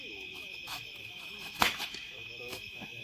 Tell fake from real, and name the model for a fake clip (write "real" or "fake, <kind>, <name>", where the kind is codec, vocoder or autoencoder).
fake, autoencoder, DAC-VAE